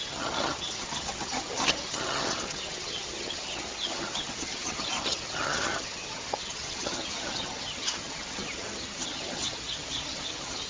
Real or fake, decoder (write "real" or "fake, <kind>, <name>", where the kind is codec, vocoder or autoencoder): fake, vocoder, HiFi-GAN